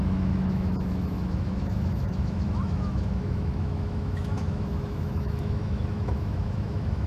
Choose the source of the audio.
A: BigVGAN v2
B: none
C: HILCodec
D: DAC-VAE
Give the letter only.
D